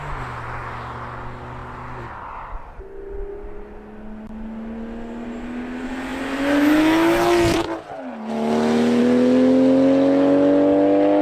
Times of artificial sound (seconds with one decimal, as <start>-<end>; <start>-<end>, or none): none